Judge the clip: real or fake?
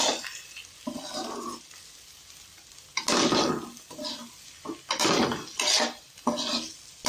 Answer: real